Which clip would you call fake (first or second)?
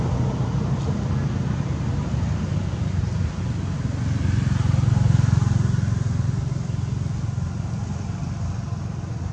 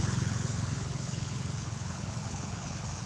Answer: second